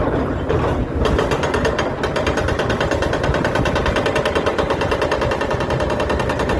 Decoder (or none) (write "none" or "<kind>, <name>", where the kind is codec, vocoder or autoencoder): none